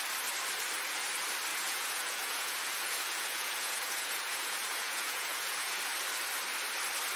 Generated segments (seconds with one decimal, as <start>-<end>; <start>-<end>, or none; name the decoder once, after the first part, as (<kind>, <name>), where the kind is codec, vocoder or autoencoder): 1.5-5.8 (vocoder, Vocos)